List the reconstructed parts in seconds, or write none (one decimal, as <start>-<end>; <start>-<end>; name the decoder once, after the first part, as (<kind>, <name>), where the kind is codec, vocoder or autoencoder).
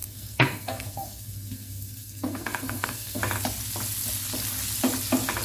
0.0-3.2 (codec, SNAC)